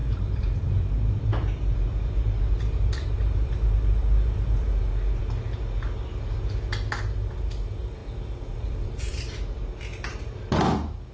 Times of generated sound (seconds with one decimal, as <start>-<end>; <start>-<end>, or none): 0.0-5.2; 8.0-10.2